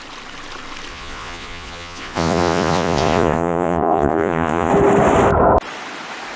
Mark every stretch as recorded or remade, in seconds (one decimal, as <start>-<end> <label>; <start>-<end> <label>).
0.0-0.9 recorded; 0.9-4.7 remade; 4.7-6.4 recorded